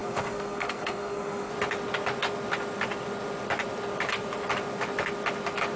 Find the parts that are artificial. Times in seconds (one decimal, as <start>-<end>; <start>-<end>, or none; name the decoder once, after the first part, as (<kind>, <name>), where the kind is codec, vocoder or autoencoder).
0.0-1.5 (codec, SNAC)